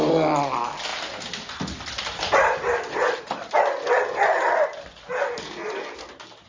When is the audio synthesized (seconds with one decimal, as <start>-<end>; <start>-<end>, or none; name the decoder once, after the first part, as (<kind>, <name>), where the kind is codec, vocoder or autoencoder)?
none